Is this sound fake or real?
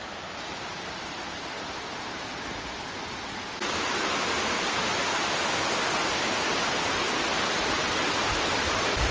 real